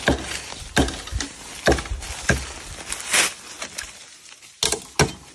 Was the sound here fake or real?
real